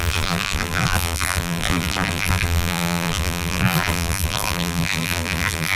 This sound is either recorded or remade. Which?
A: remade